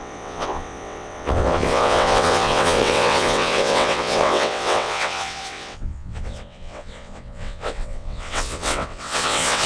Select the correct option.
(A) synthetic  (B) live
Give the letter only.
A